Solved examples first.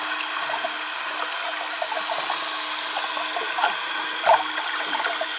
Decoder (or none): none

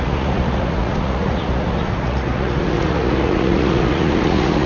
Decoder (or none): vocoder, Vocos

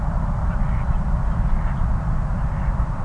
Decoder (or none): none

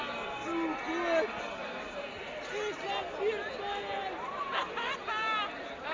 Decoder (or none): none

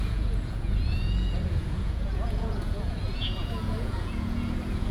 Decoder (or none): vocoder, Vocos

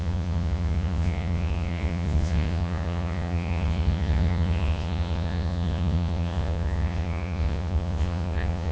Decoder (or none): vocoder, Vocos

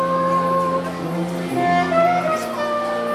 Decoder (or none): none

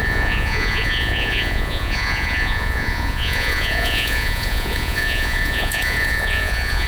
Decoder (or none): vocoder, Vocos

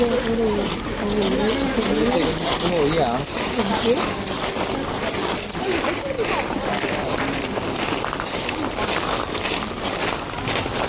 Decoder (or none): none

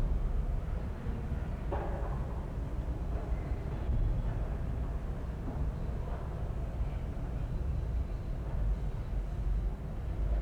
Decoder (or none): none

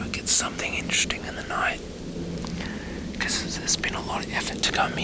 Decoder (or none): none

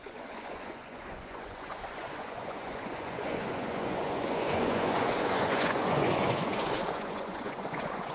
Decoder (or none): vocoder, Vocos